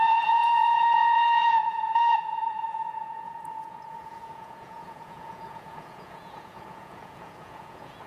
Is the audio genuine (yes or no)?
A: no